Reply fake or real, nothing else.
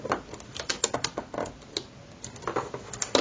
real